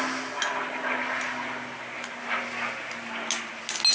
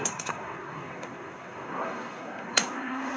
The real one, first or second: first